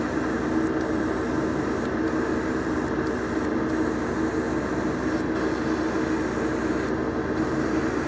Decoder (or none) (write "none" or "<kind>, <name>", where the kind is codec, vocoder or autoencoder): none